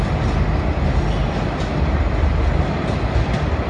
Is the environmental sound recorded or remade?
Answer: recorded